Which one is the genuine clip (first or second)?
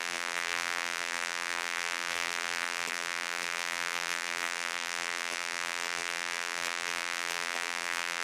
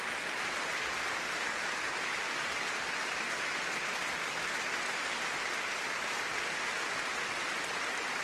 second